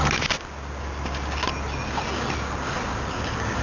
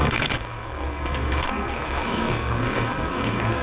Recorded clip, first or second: first